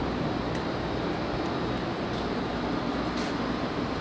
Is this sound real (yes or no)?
yes